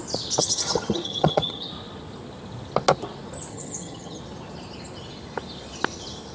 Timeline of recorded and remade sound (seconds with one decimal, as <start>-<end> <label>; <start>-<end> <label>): 0.0-0.4 recorded; 0.4-1.7 remade; 1.7-3.5 recorded; 3.5-4.2 remade; 4.2-6.3 recorded